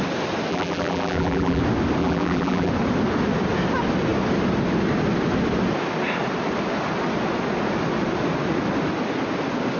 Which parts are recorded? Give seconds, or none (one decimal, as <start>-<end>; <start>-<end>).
0.0-0.5; 1.6-2.0; 2.7-9.8